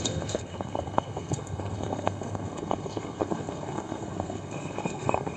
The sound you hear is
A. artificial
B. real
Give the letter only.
A